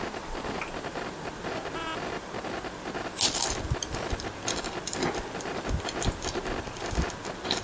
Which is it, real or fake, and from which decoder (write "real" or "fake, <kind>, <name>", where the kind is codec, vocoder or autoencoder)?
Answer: real